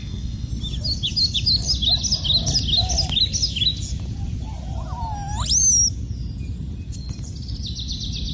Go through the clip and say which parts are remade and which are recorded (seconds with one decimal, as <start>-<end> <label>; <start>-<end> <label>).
0.0-0.5 remade; 0.5-8.3 recorded